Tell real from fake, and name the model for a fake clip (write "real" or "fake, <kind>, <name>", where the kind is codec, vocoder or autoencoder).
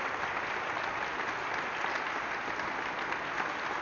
real